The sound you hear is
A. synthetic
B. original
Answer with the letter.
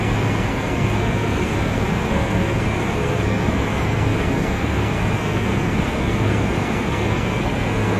A